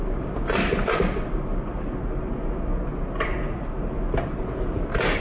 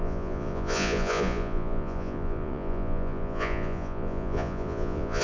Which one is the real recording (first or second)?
first